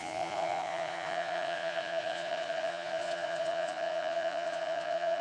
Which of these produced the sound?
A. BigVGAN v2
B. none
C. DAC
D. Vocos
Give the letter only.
D